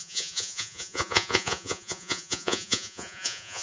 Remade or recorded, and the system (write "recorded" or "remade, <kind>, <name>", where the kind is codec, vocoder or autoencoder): remade, vocoder, Vocos